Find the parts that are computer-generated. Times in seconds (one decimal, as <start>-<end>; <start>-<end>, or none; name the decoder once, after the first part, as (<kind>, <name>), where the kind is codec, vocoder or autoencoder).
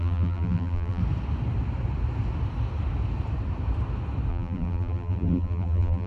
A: 0.0-1.0 (vocoder, BigVGAN v2); 4.3-6.1